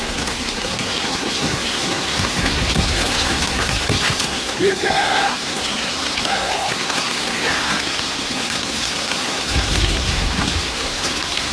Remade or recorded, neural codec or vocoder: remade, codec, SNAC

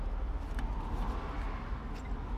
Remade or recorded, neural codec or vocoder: recorded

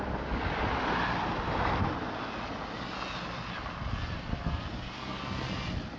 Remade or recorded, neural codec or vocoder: recorded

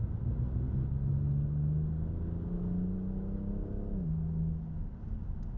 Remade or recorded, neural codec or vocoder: recorded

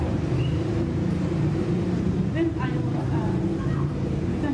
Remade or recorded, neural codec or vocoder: remade, vocoder, BigVGAN v2